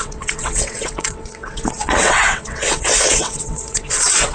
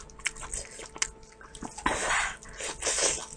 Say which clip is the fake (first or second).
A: first